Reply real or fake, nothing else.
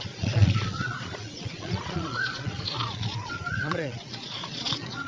fake